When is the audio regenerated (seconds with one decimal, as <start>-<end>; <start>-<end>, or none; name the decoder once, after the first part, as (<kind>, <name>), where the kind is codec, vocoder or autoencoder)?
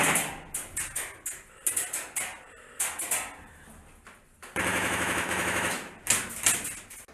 4.7-5.9 (autoencoder, DAC-VAE)